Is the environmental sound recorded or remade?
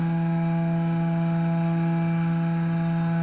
recorded